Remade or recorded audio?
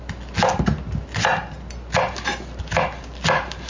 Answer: recorded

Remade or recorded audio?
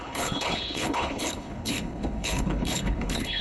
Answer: remade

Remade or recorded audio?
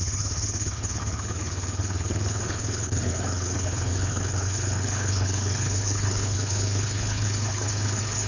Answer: remade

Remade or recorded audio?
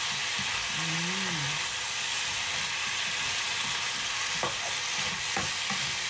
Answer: recorded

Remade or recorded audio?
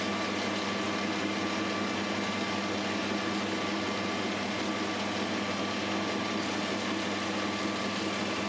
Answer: recorded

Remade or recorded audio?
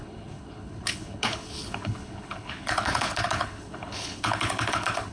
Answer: remade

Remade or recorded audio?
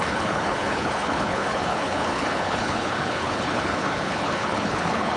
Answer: remade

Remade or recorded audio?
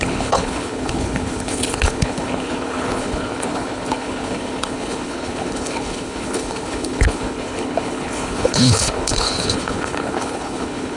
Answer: remade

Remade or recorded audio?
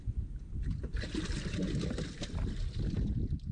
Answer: recorded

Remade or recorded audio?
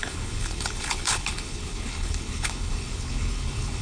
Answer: remade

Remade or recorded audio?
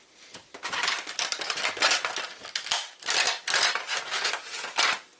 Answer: recorded